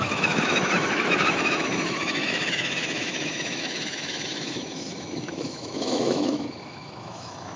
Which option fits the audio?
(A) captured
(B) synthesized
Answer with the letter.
B